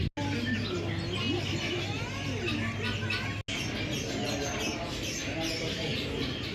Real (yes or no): yes